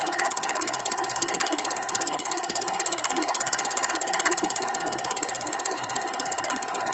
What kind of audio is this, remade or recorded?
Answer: remade